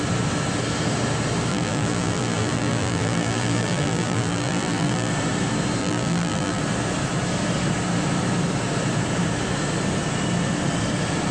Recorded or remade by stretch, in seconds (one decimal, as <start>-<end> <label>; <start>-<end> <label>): 0.0-1.5 recorded; 1.5-5.1 remade; 5.1-5.8 recorded; 5.8-6.6 remade; 6.6-11.3 recorded